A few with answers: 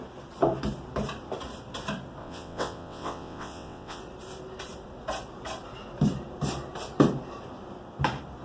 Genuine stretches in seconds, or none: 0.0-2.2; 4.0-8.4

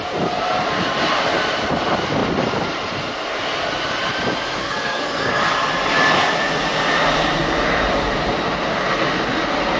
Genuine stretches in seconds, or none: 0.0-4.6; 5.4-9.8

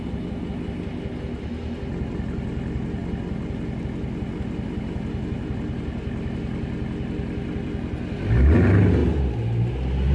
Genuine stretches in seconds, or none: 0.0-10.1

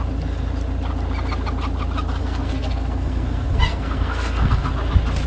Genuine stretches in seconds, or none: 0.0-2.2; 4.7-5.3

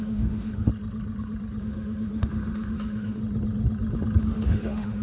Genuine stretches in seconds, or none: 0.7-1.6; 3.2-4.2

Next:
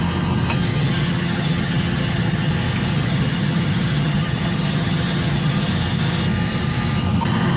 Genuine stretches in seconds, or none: 0.0-0.7; 2.5-2.9; 5.7-7.6

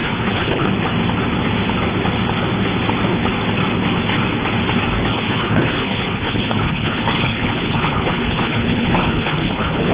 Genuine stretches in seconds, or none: 0.7-5.1

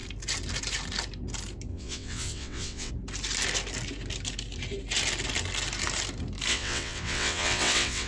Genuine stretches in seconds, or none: 0.0-1.7; 2.9-6.5